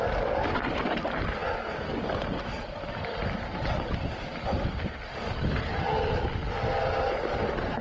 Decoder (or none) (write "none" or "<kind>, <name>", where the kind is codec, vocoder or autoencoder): none